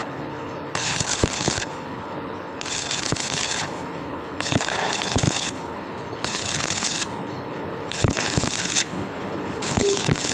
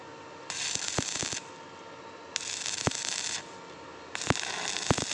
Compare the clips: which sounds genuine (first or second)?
second